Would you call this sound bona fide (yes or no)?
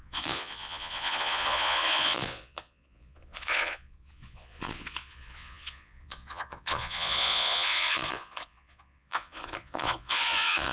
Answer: no